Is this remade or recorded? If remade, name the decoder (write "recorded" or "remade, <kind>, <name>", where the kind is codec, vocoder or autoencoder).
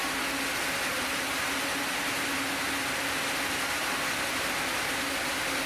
recorded